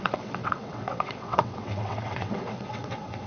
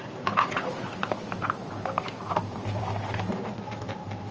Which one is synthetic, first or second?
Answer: first